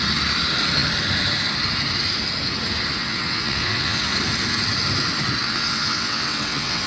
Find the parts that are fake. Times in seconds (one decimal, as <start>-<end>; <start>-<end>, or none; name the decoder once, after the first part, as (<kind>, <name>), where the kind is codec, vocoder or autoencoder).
3.0-4.1 (vocoder, WaveNeXt); 5.4-6.9